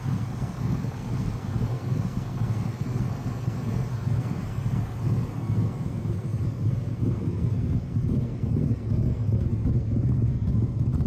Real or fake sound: fake